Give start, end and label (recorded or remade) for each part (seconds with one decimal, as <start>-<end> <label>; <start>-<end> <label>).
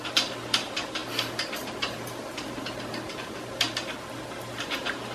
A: 0.0-1.0 remade; 1.0-4.1 recorded; 4.1-5.1 remade